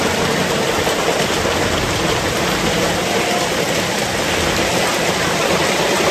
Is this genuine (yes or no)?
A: yes